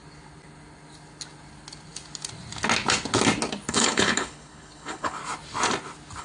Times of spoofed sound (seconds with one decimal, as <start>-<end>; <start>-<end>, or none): 3.7-5.2